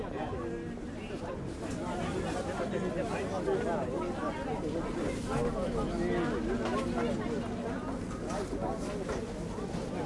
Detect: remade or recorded recorded